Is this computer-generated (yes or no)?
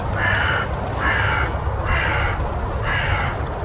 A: no